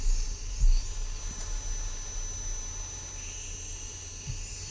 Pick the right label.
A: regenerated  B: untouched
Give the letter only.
B